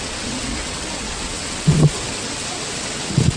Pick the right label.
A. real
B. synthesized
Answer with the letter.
B